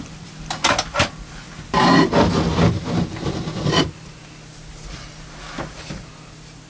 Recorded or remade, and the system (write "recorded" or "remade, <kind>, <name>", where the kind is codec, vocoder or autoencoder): recorded